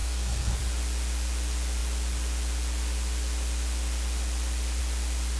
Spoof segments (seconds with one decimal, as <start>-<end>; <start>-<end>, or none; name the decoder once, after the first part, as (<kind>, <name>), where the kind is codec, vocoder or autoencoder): 0.0-0.6 (codec, SNAC)

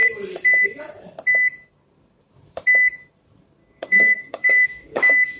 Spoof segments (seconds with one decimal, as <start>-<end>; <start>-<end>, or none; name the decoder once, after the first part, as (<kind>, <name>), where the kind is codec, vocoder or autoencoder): 3.6-5.0 (codec, DAC)

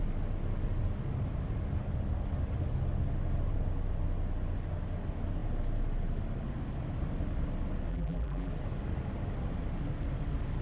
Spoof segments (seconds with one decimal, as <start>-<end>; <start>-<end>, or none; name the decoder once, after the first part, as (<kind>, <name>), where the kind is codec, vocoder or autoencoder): 7.9-8.5 (vocoder, BigVGAN v2)